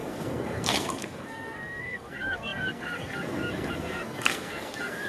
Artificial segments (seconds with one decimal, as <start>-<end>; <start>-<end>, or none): 0.0-5.1